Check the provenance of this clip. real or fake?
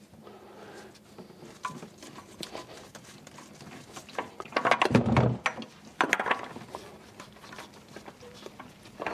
real